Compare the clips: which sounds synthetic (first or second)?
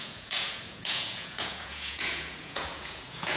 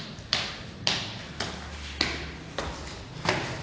first